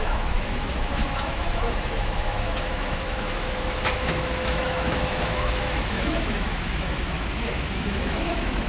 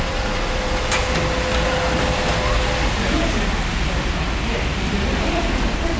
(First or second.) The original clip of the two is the second